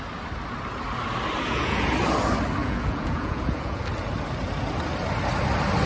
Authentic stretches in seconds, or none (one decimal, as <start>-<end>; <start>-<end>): 0.0-1.4; 1.9-2.6; 3.8-5.9